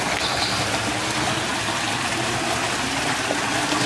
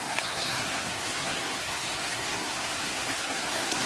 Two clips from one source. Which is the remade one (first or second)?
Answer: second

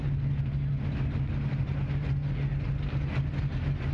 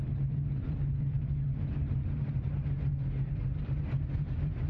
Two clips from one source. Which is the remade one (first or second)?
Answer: second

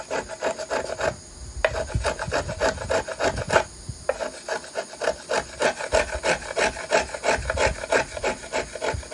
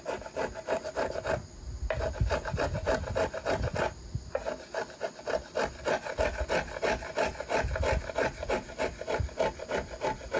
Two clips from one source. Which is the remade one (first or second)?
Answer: second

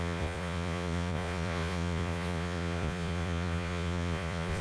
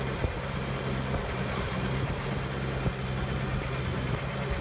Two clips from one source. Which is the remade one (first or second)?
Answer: first